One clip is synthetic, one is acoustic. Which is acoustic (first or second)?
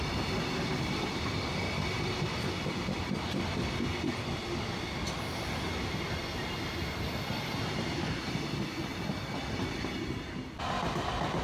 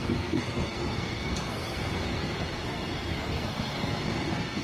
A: first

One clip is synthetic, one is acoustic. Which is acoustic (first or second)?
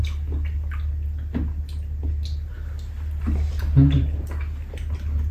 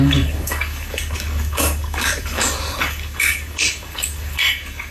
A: first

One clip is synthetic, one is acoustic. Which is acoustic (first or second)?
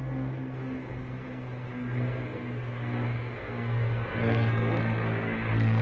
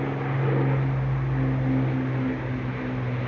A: second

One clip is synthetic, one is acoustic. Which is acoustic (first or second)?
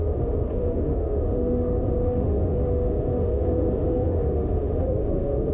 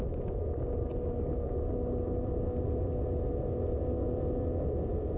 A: second